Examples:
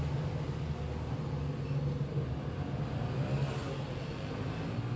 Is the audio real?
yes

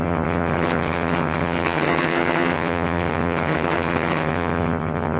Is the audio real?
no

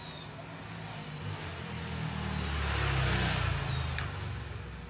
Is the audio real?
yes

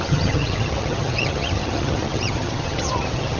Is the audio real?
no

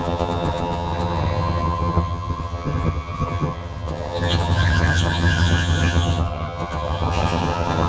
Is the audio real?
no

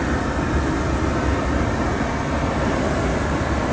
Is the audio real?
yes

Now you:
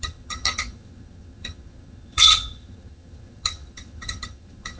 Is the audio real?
no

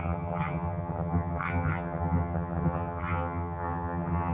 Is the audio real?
no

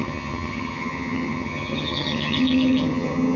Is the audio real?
no